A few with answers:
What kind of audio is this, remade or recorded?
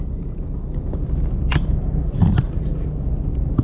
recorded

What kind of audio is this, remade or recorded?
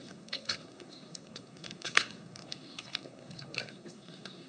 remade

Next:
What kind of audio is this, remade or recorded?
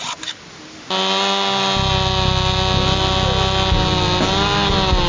recorded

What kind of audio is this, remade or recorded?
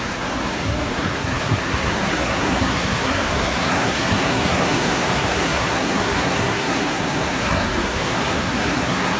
remade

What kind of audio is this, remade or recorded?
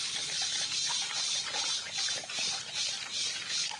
recorded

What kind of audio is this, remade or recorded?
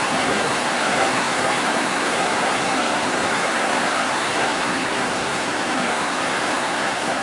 remade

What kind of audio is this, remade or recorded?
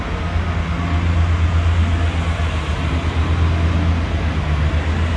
recorded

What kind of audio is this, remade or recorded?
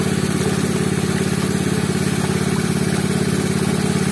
recorded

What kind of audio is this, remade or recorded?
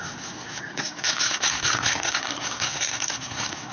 remade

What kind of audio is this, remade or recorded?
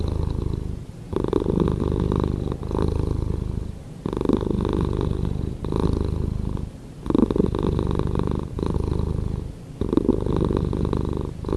recorded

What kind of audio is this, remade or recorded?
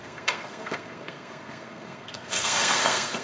remade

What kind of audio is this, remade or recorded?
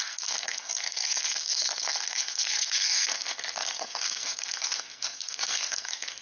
remade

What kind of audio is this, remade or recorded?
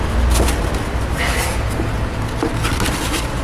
recorded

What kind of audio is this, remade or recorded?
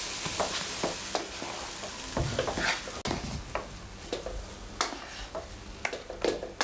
recorded